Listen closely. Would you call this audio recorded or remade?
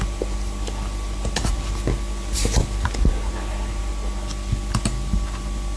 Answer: recorded